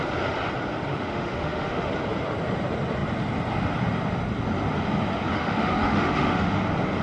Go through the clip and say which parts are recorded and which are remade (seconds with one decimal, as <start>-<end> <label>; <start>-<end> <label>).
0.0-0.9 recorded; 0.9-1.9 remade; 1.9-5.3 recorded; 5.3-6.6 remade; 6.6-7.0 recorded